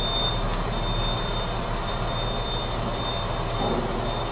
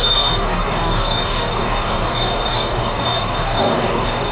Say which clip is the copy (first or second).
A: second